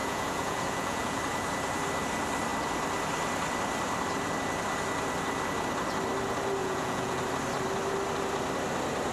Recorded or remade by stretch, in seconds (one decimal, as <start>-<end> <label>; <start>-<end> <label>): 0.0-1.2 remade; 1.2-6.6 recorded; 6.6-7.2 remade; 7.2-9.1 recorded

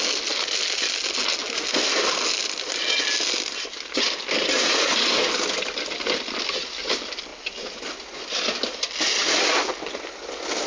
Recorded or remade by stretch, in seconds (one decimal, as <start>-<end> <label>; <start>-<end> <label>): 0.0-10.7 recorded

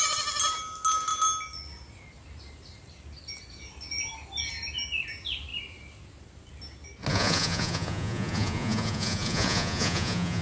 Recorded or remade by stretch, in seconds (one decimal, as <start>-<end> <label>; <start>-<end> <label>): 0.0-7.1 recorded; 7.1-10.4 remade

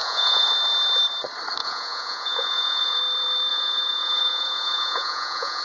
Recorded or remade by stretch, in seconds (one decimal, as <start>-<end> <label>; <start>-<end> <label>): 0.0-0.5 remade; 0.5-1.6 recorded; 1.6-3.0 remade; 3.0-3.5 recorded; 3.5-5.6 remade

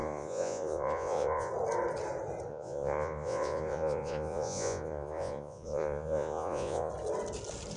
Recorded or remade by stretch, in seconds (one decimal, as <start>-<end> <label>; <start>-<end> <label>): 0.0-1.5 remade; 1.5-2.5 recorded; 2.5-6.9 remade; 6.9-7.8 recorded

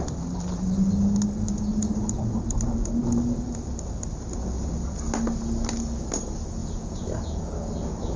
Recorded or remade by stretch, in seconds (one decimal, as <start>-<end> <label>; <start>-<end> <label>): 0.0-6.6 recorded; 6.6-7.5 remade; 7.5-8.2 recorded

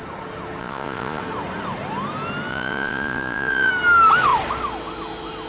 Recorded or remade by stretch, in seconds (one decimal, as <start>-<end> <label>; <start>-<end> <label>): 0.0-0.6 recorded; 0.6-1.2 remade; 1.2-2.5 recorded; 2.5-3.7 remade; 3.7-5.5 recorded